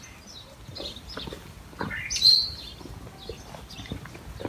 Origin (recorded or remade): recorded